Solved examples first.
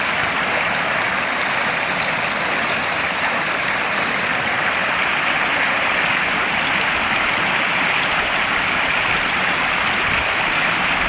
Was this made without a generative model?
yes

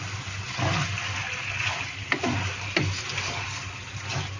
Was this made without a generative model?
yes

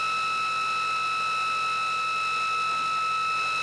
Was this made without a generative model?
yes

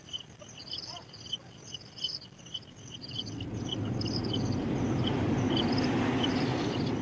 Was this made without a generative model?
no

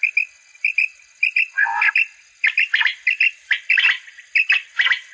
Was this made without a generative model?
yes